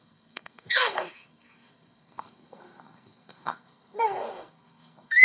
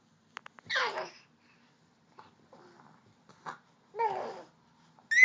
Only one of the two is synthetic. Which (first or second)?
first